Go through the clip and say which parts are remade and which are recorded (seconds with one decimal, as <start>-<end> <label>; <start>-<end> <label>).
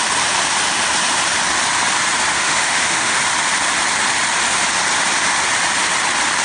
0.0-2.3 recorded; 2.3-3.2 remade; 3.2-6.4 recorded